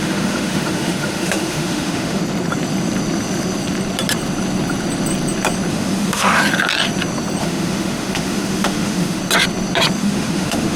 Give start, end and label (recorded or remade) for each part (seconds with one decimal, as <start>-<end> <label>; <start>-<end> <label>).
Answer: 0.0-2.2 remade; 2.2-5.7 recorded; 5.7-6.4 remade; 6.4-7.4 recorded; 7.4-9.2 remade; 9.2-10.0 recorded; 10.0-10.8 remade